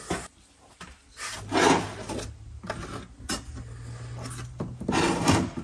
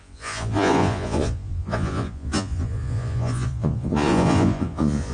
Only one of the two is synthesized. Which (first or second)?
second